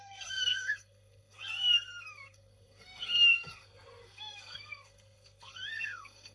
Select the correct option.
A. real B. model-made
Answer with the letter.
B